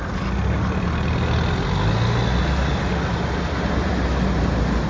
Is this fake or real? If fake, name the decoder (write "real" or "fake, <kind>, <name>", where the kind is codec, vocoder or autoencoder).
real